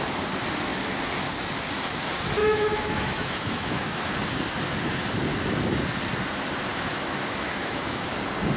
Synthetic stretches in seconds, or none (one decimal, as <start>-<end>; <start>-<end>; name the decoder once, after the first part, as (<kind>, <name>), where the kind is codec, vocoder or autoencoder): 2.4-4.1 (autoencoder, DAC-VAE); 6.7-8.1